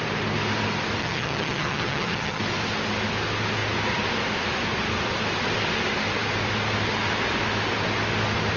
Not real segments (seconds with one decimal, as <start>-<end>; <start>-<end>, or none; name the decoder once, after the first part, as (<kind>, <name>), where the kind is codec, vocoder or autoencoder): 1.0-2.4 (vocoder, HiFi-GAN)